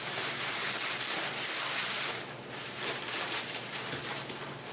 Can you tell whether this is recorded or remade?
remade